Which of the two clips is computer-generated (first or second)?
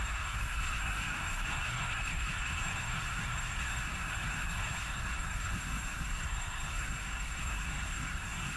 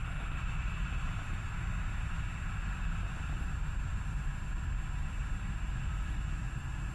first